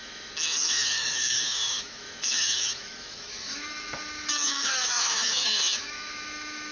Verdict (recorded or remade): remade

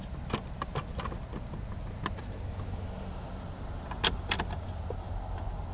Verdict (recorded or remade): recorded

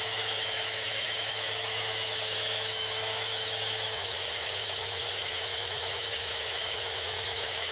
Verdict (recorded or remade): remade